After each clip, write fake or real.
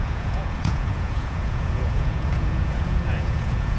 fake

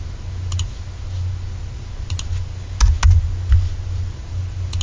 real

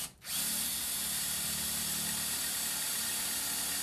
real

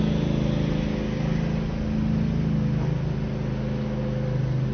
real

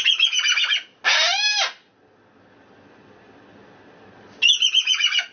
real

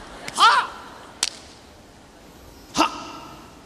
real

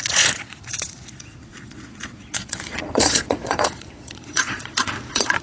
fake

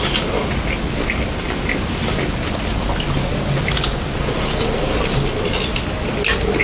real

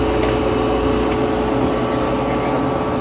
real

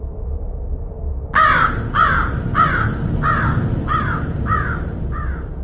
real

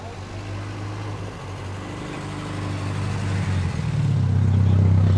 real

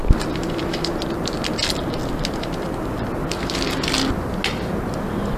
real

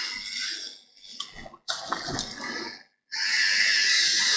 real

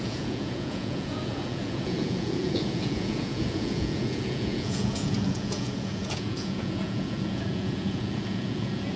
fake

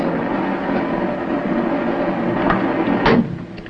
real